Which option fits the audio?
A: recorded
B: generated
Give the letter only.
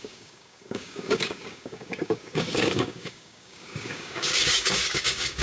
B